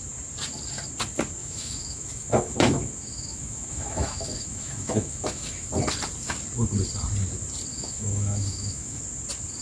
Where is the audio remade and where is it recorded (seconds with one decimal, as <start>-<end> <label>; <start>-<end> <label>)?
0.0-1.4 recorded; 1.4-5.7 remade; 5.7-7.7 recorded; 7.7-9.0 remade; 9.0-9.6 recorded